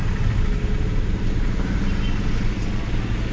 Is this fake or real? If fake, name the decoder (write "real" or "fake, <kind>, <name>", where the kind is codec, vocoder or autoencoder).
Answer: real